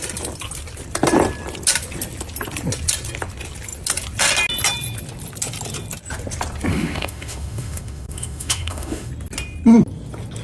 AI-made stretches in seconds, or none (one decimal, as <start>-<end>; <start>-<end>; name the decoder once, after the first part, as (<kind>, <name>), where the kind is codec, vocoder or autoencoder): 6.7-9.1 (autoencoder, DAC-VAE)